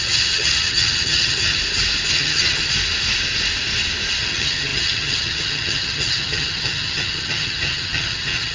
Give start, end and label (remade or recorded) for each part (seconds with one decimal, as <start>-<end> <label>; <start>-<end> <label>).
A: 0.0-1.6 remade; 1.6-2.1 recorded; 2.1-2.6 remade; 2.6-4.2 recorded; 4.2-8.5 remade